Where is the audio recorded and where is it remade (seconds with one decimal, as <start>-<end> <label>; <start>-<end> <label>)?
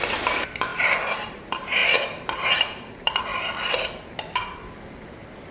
0.0-3.3 remade; 3.3-5.0 recorded; 5.0-5.5 remade